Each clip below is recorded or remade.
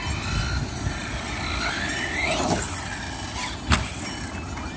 recorded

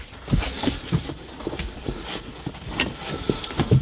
recorded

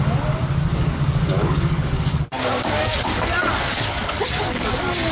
remade